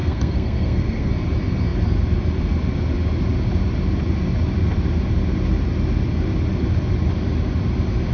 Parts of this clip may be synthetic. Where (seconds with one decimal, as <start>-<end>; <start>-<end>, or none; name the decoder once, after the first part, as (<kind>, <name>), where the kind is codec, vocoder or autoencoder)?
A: 0.0-1.1 (codec, SNAC)